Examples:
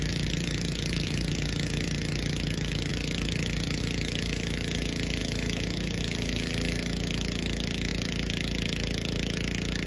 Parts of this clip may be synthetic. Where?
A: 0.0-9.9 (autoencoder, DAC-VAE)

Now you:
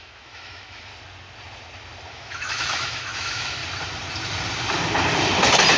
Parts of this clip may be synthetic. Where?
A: 0.0-0.9 (autoencoder, DAC-VAE); 2.1-3.6

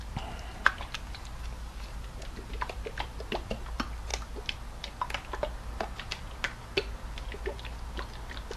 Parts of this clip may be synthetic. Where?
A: none

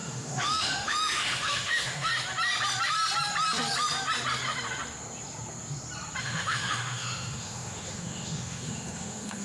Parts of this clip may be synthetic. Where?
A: 0.0-2.1 (autoencoder, DAC-VAE); 6.2-9.4

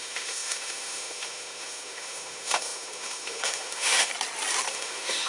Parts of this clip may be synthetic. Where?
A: 0.0-4.1 (autoencoder, DAC-VAE); 4.7-5.3